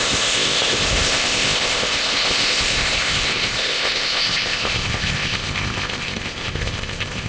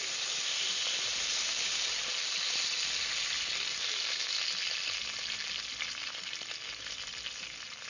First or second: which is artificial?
first